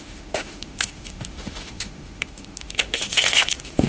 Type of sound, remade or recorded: remade